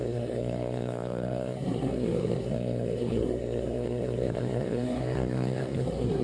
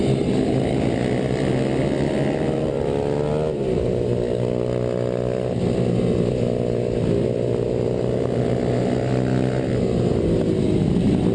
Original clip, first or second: second